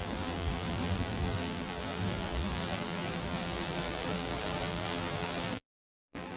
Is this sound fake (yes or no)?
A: yes